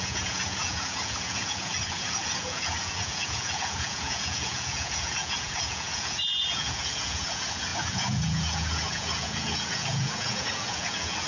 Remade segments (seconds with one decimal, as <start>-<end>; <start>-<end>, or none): 0.0-11.3